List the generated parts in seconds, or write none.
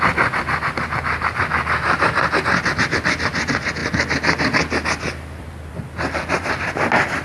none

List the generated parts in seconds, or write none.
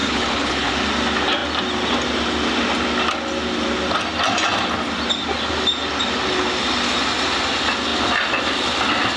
0.0-0.7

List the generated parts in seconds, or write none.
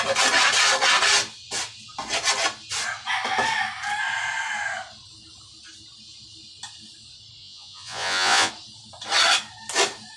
7.4-8.5